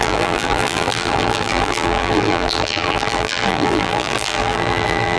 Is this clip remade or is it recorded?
remade